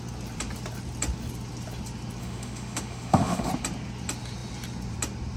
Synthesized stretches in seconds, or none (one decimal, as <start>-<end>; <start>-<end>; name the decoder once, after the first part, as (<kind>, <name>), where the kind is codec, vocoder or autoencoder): 2.2-3.5 (autoencoder, DAC-VAE)